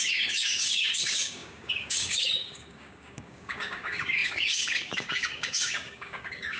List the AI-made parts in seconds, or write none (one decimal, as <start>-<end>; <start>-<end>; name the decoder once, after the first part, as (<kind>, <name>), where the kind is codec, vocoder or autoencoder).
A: 0.0-6.6 (codec, DAC)